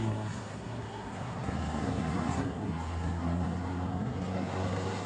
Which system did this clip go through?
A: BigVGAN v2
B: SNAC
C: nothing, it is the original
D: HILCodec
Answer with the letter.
B